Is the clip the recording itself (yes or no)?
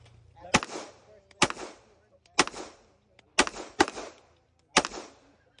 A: yes